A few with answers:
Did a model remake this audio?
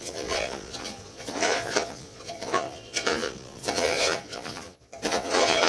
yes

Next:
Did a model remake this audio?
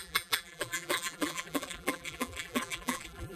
yes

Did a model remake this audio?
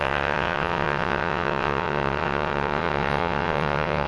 yes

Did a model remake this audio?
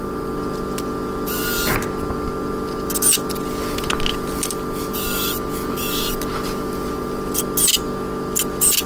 no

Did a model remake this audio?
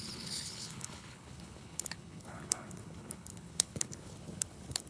yes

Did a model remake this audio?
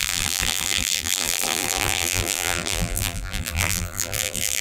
yes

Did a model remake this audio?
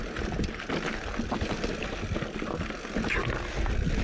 no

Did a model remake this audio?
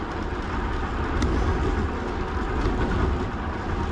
no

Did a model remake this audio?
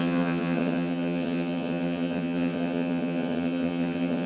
yes